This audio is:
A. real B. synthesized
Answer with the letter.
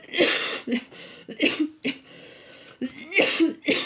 A